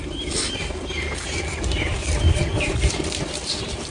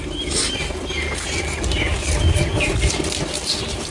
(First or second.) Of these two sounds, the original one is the second